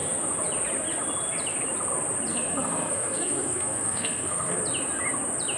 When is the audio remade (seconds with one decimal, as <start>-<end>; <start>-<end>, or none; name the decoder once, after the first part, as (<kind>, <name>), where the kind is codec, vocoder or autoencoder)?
2.3-4.6 (codec, SNAC)